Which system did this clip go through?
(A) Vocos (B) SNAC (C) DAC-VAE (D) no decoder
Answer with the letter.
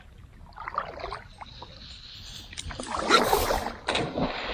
D